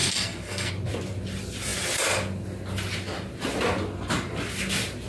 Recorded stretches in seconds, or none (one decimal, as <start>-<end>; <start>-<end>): 0.7-5.1